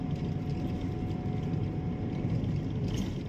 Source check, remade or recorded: recorded